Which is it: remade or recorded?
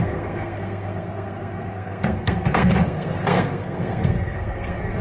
remade